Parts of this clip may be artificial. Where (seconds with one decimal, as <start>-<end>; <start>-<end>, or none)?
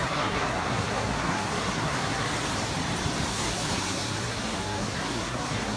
0.0-2.3; 3.3-5.8